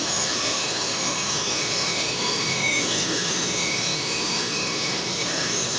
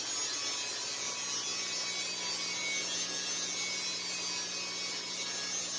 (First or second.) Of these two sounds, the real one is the second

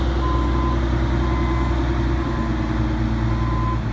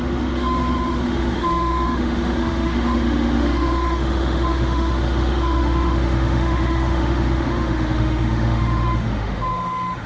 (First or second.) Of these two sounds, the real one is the first